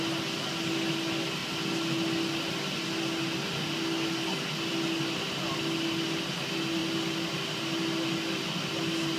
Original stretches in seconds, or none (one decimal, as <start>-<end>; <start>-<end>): 0.0-9.2